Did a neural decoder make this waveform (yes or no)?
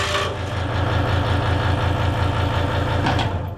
no